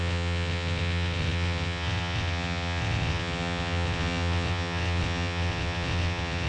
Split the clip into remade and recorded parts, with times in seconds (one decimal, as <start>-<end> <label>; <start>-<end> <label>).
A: 0.0-6.5 remade